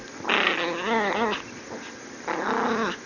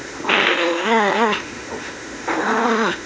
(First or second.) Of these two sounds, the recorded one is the first